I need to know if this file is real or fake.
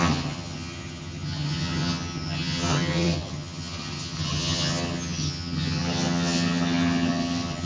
fake